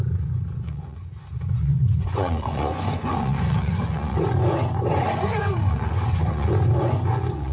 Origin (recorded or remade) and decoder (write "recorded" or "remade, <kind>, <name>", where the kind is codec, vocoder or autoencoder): remade, vocoder, Vocos